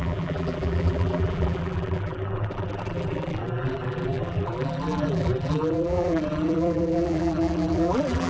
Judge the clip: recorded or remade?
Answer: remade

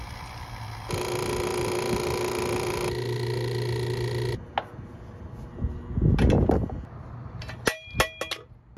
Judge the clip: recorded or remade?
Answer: recorded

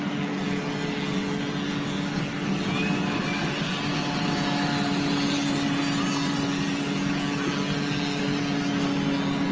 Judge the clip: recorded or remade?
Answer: recorded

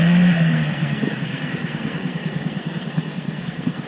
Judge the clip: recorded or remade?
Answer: remade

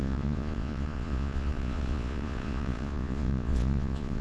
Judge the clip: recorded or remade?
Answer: remade